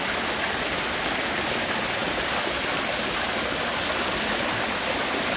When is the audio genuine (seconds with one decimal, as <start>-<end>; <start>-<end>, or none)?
0.0-5.4